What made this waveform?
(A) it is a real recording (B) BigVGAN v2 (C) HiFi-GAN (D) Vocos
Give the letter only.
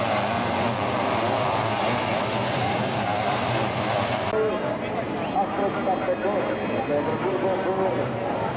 A